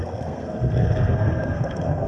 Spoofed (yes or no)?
yes